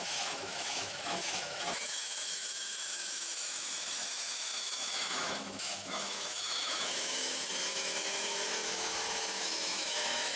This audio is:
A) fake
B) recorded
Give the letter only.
A